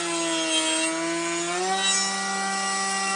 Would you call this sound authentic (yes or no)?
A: yes